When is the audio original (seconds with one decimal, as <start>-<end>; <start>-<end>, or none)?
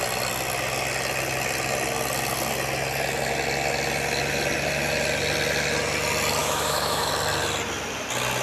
0.0-6.4; 7.1-8.4